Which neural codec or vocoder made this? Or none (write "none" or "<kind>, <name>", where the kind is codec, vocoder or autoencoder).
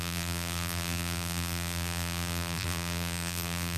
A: vocoder, BigVGAN v2